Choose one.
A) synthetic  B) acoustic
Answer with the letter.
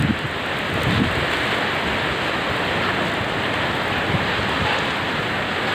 B